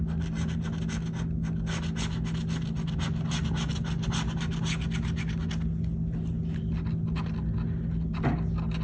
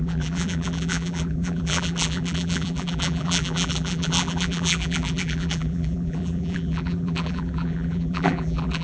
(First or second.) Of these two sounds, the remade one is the second